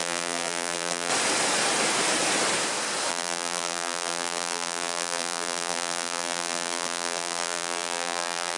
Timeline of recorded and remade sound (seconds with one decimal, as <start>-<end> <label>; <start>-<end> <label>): 0.0-1.1 remade; 1.1-3.1 recorded; 3.1-8.6 remade